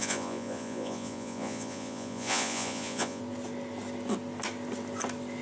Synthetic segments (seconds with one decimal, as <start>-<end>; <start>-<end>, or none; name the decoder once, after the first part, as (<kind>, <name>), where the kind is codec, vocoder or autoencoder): 0.0-3.2 (vocoder, Vocos)